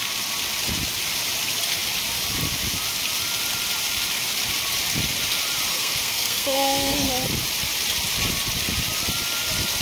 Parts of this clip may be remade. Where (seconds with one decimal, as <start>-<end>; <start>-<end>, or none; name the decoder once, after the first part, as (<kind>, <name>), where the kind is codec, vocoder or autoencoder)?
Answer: 5.7-7.1 (codec, SNAC)